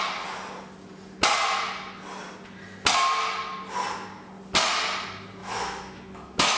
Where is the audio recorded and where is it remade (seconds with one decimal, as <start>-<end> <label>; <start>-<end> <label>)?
0.0-5.4 recorded; 5.4-6.6 remade